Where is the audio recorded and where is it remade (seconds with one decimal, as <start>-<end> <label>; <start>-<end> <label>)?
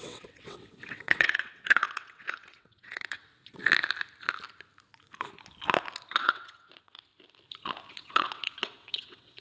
0.0-3.6 remade; 3.6-6.1 recorded; 6.1-7.1 remade; 7.1-7.9 recorded; 7.9-9.4 remade